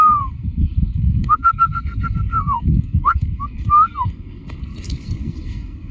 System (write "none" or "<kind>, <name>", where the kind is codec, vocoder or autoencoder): codec, SNAC